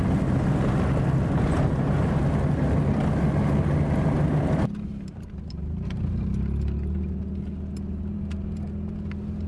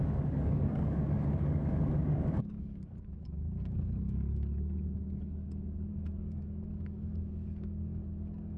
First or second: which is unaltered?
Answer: first